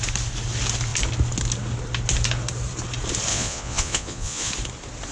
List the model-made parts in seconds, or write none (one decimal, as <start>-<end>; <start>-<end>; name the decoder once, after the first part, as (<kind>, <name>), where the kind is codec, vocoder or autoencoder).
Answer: 3.3-4.5 (vocoder, Vocos)